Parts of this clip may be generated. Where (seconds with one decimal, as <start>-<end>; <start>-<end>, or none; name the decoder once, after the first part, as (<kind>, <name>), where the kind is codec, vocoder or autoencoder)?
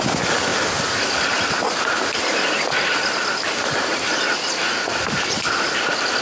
0.0-0.5 (vocoder, BigVGAN v2); 2.5-3.3; 4.3-6.2